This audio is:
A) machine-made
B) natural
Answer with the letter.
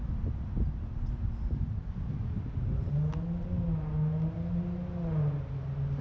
B